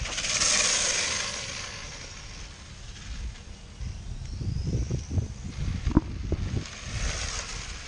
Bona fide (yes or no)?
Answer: yes